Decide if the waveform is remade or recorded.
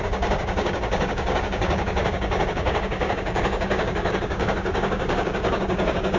remade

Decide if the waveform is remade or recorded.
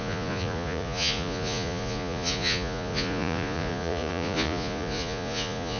remade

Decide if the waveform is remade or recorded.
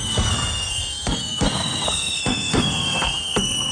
remade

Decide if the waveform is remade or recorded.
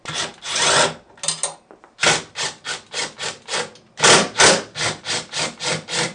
recorded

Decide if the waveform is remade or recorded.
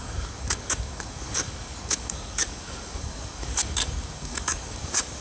remade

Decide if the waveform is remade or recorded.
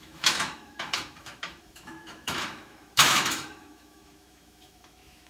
remade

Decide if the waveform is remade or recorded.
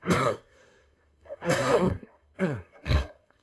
remade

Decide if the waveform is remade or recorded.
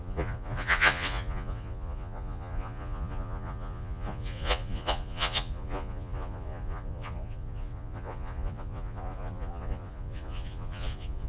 remade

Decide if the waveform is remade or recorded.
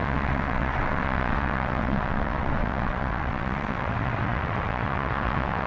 remade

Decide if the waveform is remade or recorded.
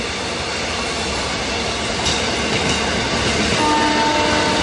recorded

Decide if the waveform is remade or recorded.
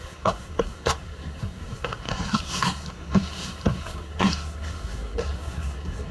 remade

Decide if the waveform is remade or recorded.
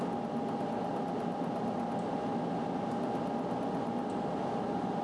recorded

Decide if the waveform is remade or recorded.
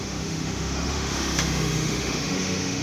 remade